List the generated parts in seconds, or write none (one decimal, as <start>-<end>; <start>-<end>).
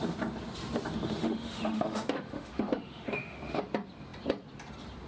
1.2-3.6